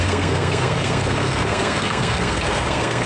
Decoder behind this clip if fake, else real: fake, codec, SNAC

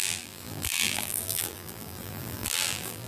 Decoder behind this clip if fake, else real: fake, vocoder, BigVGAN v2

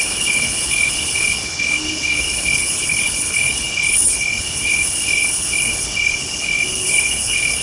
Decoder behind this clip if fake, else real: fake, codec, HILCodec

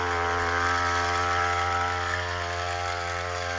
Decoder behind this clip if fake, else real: real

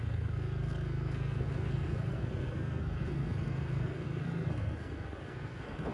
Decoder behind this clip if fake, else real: fake, codec, SNAC